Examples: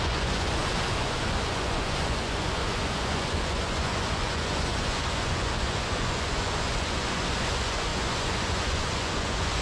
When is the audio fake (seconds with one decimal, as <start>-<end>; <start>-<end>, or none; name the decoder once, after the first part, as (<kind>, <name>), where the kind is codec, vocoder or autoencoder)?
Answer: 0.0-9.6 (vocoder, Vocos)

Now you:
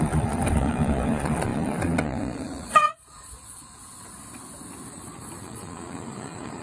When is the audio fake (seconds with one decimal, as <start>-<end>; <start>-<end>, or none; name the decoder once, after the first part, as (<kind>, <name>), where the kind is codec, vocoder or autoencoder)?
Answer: 0.0-3.8 (vocoder, Vocos); 4.9-6.6

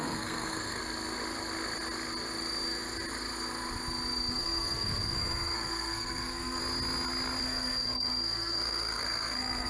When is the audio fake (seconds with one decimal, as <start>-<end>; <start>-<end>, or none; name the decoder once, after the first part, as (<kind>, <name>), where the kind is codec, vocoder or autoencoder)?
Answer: 0.0-0.8 (codec, SNAC); 4.3-6.6; 7.4-9.7